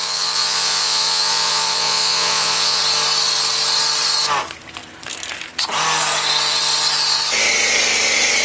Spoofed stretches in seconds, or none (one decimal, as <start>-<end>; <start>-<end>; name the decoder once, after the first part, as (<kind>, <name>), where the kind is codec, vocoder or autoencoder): 0.0-2.8 (vocoder, Vocos)